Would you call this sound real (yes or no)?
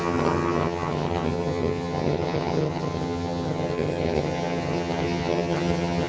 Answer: no